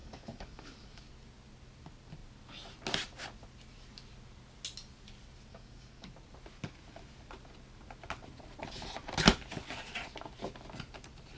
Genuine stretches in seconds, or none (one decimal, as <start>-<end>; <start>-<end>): 1.1-5.5; 6.1-11.4